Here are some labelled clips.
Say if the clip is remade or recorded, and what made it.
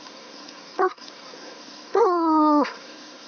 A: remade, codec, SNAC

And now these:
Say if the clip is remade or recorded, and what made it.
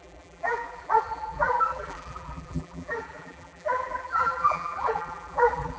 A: remade, vocoder, BigVGAN v2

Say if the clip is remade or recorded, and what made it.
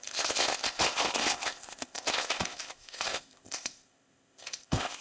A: remade, codec, ZipCodec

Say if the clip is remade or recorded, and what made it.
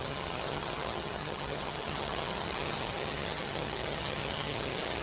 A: remade, vocoder, HiFi-GAN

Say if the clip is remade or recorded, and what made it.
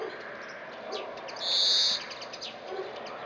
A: recorded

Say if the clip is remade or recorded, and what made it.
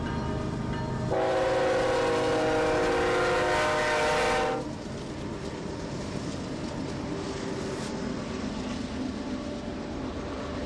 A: recorded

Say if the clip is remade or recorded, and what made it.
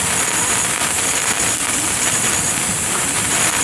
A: recorded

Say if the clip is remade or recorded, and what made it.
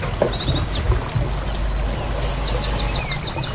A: recorded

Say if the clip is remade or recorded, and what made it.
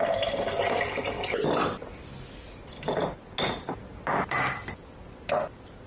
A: recorded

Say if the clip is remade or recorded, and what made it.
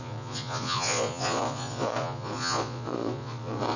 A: remade, vocoder, Vocos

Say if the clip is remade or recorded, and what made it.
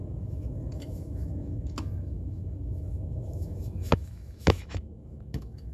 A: remade, autoencoder, DAC-VAE